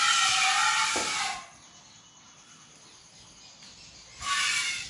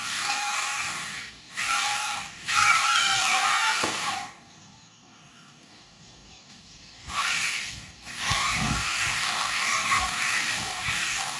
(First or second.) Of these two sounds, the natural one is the first